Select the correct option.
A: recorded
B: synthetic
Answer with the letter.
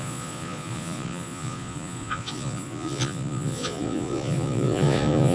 B